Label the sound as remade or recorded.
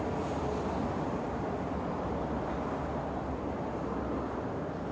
recorded